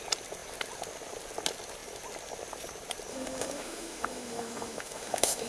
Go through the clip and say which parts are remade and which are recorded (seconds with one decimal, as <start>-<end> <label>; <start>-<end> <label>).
0.0-3.1 recorded; 3.1-5.5 remade